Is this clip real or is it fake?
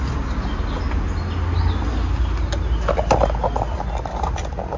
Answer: real